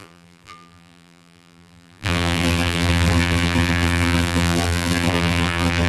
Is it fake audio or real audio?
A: fake